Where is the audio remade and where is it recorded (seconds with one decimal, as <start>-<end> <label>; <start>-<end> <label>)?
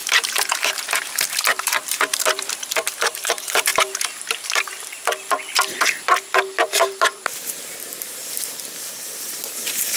0.0-3.7 remade; 3.7-4.4 recorded; 4.4-5.0 remade; 5.0-6.6 recorded; 6.6-10.0 remade